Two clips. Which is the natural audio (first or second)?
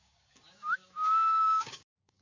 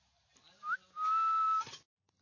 second